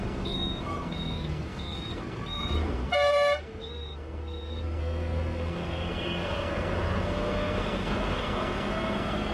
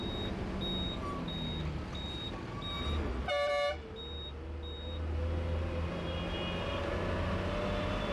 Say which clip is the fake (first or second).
first